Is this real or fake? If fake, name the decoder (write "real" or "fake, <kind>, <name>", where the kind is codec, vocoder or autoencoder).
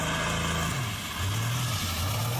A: real